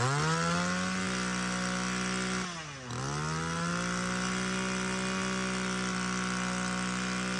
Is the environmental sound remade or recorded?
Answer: recorded